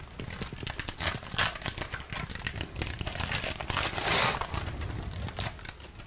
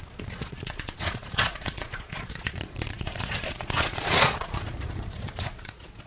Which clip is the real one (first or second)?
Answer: first